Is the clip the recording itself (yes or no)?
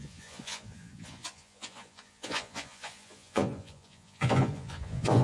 no